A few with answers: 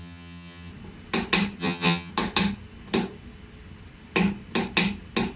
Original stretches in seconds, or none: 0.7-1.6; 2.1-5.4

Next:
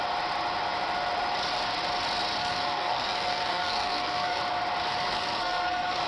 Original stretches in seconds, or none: 0.0-2.4; 4.4-4.9

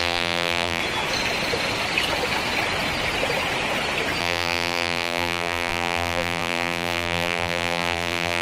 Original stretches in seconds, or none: 0.8-4.2

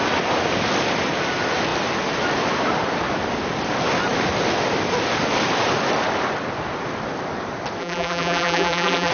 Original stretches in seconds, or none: 0.0-7.8